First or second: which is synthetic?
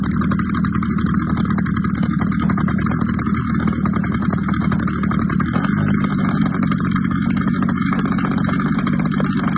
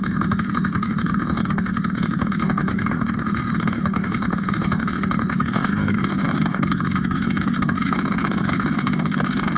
second